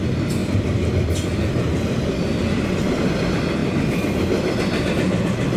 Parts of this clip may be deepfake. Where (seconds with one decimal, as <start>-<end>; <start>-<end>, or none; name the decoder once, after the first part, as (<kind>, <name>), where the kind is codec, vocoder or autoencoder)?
0.4-0.9 (vocoder, BigVGAN v2)